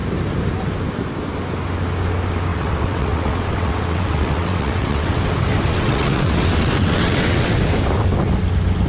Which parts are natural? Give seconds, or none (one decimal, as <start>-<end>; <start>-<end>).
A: 0.0-2.5; 5.2-5.7; 7.6-8.9